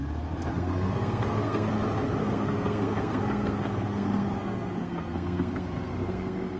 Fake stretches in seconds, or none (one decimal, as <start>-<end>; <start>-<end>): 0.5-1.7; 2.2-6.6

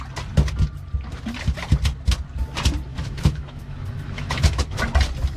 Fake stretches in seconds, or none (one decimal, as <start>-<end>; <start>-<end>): 2.9-4.6

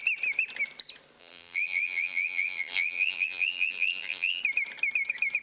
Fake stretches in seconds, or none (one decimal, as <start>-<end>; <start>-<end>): 1.2-4.4

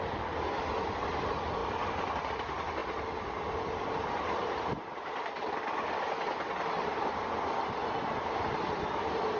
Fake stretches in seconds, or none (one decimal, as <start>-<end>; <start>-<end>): none